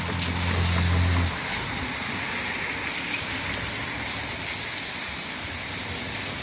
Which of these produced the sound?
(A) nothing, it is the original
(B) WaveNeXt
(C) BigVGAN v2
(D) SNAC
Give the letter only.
A